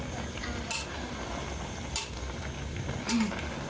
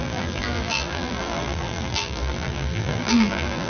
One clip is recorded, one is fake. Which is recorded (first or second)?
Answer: first